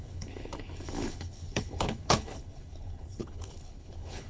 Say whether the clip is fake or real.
fake